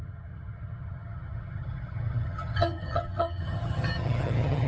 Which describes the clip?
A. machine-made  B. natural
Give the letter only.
A